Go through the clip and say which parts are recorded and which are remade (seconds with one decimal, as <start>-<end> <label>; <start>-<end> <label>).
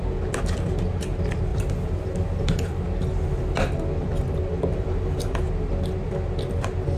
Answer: 0.0-4.7 recorded; 4.7-5.4 remade; 5.4-7.0 recorded